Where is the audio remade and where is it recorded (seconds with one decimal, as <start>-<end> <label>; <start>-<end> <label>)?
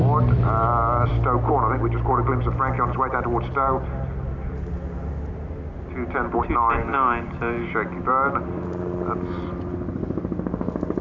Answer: 0.0-11.0 recorded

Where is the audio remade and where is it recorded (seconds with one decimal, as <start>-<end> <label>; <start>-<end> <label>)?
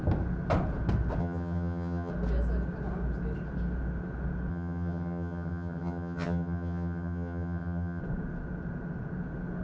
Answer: 0.0-1.2 recorded; 1.2-2.1 remade; 2.1-4.5 recorded; 4.5-8.0 remade; 8.0-9.6 recorded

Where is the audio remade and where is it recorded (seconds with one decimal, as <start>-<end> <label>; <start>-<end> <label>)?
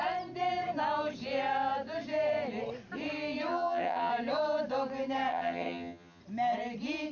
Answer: 0.0-3.5 recorded; 3.5-4.1 remade; 4.1-5.3 recorded; 5.3-6.2 remade; 6.2-7.1 recorded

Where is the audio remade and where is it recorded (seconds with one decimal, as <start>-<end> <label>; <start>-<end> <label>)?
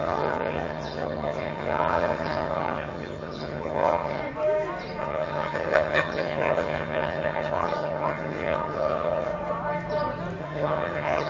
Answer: 0.0-4.2 remade; 4.2-5.0 recorded; 5.0-9.3 remade; 9.3-10.4 recorded; 10.4-11.3 remade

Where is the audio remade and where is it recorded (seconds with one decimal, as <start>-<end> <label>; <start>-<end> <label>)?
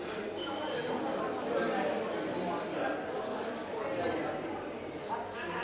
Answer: 0.0-5.6 recorded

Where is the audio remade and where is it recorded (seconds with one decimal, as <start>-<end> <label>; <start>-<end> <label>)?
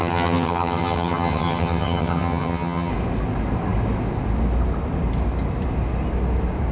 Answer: 0.0-2.9 remade; 2.9-6.7 recorded